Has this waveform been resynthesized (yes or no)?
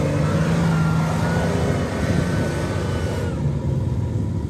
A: no